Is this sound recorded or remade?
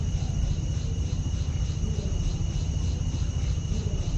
remade